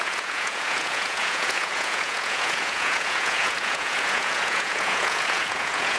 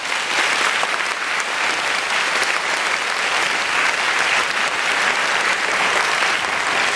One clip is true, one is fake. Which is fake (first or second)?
first